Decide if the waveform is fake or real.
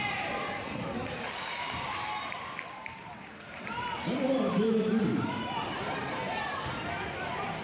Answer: fake